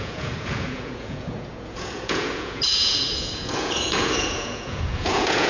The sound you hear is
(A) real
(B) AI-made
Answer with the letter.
B